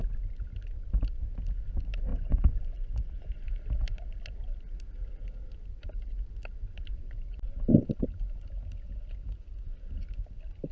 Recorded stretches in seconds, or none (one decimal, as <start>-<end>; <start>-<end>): 0.0-2.1; 3.4-10.7